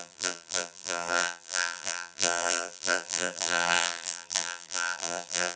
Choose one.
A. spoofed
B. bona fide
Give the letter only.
A